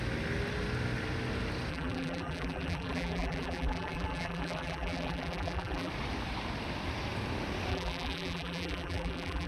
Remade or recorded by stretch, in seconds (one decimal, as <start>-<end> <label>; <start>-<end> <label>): 0.0-1.7 recorded; 1.7-5.9 remade; 5.9-7.7 recorded; 7.7-9.5 remade